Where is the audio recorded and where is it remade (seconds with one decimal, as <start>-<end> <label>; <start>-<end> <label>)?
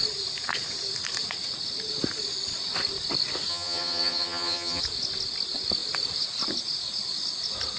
0.0-3.5 recorded; 3.5-4.8 remade; 4.8-7.8 recorded